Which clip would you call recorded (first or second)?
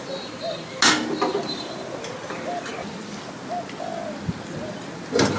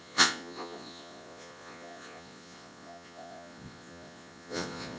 first